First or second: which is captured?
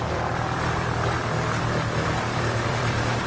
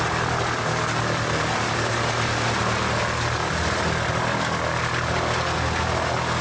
second